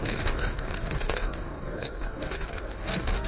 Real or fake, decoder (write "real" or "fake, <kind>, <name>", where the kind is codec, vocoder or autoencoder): fake, codec, DAC